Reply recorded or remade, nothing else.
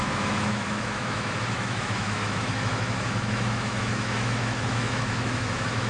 remade